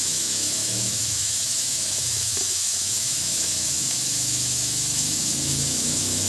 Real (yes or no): no